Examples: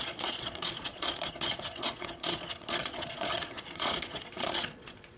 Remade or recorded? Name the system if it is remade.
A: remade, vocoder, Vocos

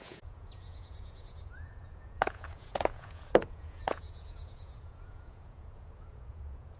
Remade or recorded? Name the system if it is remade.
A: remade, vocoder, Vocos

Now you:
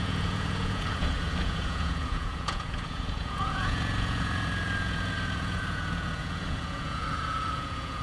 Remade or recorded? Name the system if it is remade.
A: remade, vocoder, Vocos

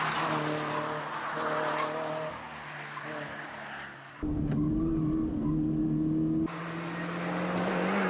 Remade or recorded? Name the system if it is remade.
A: recorded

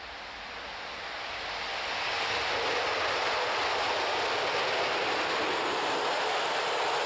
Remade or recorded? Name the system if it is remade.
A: recorded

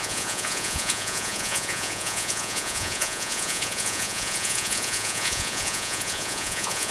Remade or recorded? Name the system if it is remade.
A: remade, vocoder, Vocos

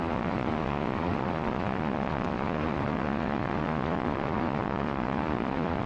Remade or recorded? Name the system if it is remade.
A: remade, vocoder, Vocos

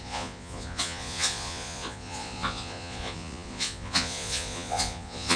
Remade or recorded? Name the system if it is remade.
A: remade, vocoder, Vocos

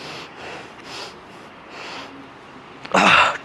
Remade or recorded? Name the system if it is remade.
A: recorded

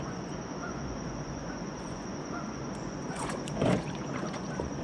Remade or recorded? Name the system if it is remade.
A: remade, vocoder, Vocos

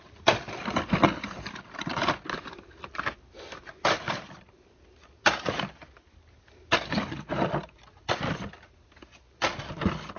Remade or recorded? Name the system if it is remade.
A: recorded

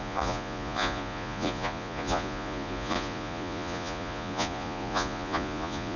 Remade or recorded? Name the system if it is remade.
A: remade, vocoder, Vocos